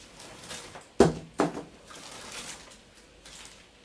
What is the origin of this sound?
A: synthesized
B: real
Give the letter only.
B